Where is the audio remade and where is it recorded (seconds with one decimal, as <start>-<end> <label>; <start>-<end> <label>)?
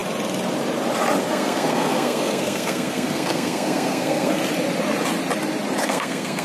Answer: 0.0-1.2 recorded; 1.2-4.4 remade; 4.4-5.8 recorded; 5.8-6.4 remade